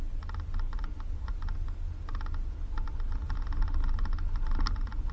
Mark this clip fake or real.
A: real